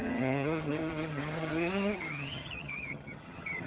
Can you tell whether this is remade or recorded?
remade